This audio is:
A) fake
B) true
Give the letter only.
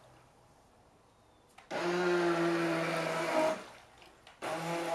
B